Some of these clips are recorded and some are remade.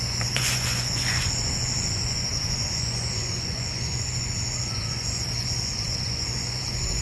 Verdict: remade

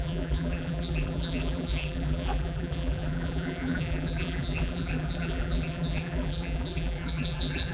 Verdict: remade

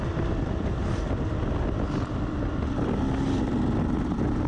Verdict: recorded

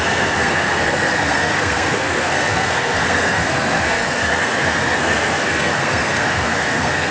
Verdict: remade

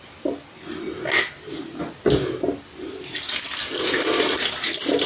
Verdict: recorded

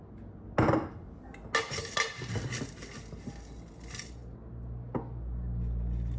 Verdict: recorded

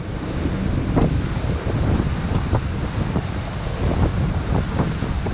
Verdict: recorded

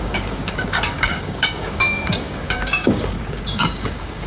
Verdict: remade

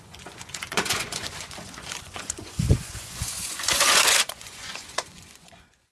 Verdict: remade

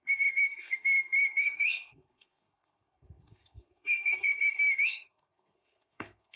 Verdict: remade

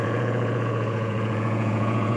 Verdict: remade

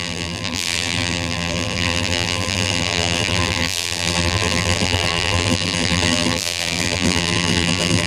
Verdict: remade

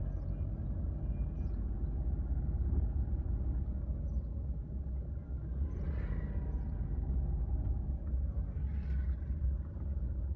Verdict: recorded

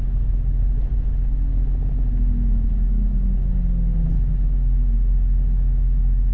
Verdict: recorded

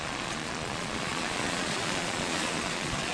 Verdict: remade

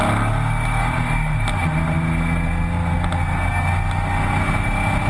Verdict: recorded